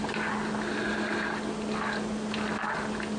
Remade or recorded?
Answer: recorded